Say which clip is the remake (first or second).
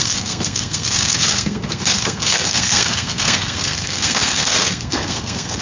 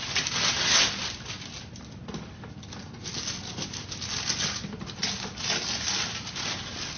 first